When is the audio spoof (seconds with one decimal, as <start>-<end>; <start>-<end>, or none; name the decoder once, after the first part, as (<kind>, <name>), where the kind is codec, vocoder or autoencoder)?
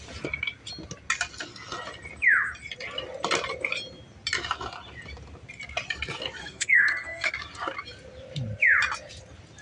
6.4-7.3 (codec, SNAC)